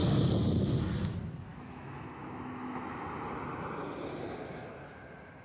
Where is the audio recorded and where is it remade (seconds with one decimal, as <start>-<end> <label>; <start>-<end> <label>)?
0.0-1.5 recorded; 1.5-3.0 remade; 3.0-5.4 recorded